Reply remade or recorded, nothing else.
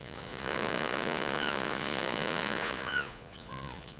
remade